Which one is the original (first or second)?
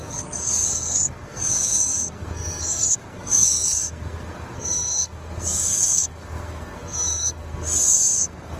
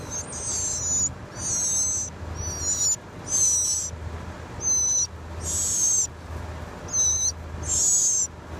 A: second